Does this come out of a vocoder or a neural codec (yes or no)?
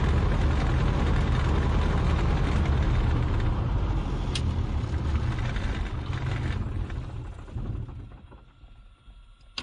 no